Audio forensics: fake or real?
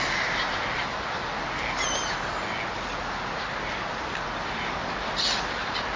real